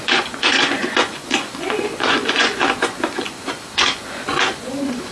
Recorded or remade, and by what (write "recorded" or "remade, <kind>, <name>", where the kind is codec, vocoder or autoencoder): remade, vocoder, Vocos